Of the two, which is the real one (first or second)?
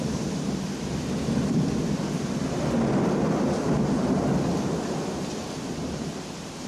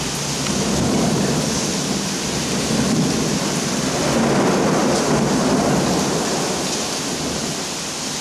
second